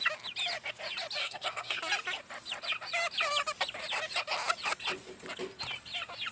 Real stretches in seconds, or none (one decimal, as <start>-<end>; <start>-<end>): 0.0-1.2; 1.8-6.3

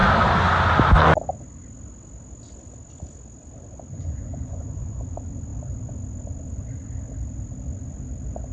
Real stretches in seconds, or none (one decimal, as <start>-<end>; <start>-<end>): 0.0-3.9; 5.0-8.5

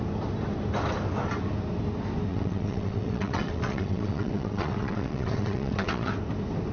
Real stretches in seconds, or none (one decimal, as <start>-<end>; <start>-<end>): 0.0-2.3; 6.1-6.7

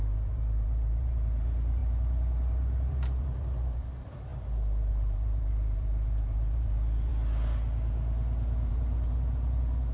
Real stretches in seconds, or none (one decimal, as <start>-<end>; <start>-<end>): 4.3-4.9; 7.1-8.7